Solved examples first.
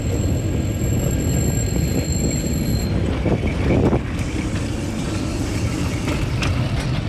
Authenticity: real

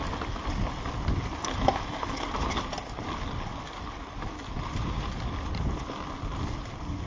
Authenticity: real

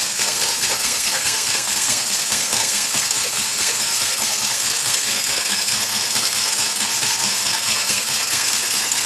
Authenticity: fake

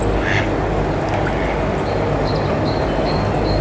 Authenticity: real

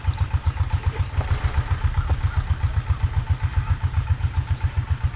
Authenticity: real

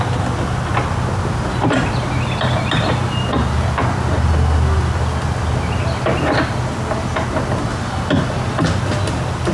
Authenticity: real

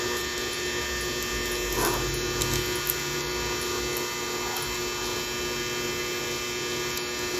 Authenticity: real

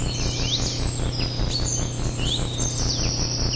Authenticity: real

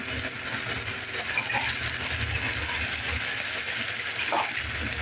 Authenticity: real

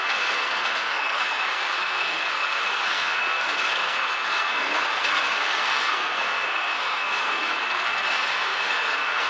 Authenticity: fake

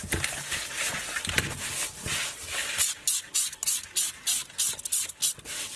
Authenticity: real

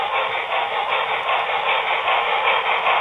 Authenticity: real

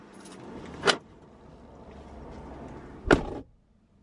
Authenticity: real